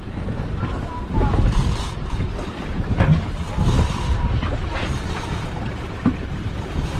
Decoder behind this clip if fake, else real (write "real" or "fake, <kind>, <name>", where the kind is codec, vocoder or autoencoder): fake, vocoder, BigVGAN v2